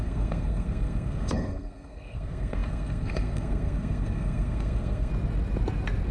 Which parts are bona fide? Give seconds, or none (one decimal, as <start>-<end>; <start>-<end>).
5.1-6.1